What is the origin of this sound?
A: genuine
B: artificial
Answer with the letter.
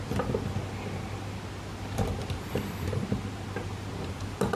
A